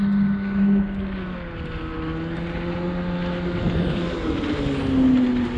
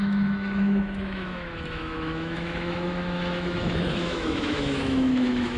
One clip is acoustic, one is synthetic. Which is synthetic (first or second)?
second